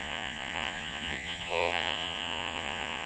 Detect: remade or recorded remade